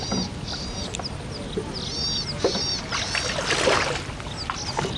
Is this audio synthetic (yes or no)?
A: no